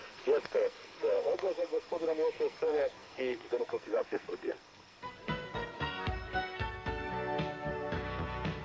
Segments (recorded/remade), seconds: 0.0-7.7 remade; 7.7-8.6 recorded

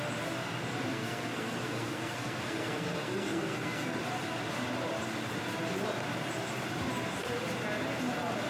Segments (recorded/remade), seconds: 0.0-0.9 recorded; 0.9-4.0 remade; 4.0-8.5 recorded

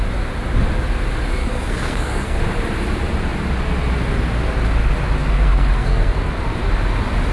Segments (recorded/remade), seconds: 0.0-1.4 recorded; 1.4-2.4 remade; 2.4-5.2 recorded; 5.2-6.3 remade; 6.3-7.3 recorded